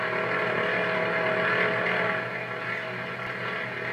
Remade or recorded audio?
recorded